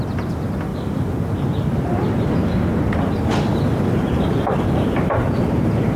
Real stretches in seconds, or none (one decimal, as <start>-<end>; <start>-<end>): 0.0-0.7; 2.3-3.5